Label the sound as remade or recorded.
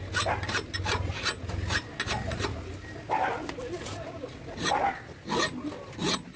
recorded